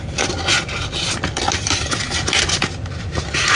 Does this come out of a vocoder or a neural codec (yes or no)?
no